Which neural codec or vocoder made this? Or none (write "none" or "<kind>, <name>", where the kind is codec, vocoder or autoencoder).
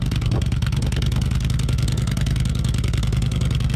codec, SNAC